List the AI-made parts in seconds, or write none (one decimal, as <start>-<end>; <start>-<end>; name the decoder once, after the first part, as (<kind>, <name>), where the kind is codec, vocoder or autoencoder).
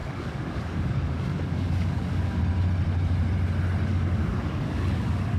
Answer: 0.0-2.4 (codec, DAC); 3.9-5.4